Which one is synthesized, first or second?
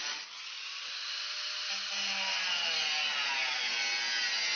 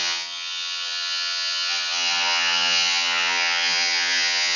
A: second